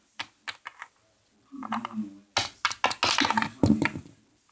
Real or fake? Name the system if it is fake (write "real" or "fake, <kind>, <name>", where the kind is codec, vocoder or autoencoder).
real